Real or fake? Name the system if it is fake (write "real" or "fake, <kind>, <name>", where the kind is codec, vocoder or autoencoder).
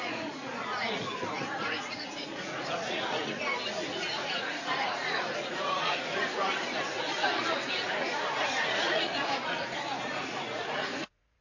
fake, vocoder, Vocos